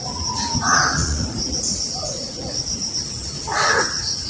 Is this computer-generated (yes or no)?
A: yes